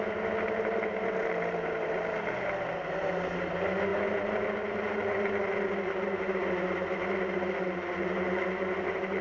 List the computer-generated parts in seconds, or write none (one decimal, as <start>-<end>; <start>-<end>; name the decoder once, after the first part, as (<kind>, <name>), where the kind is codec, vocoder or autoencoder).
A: none